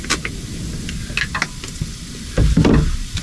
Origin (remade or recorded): recorded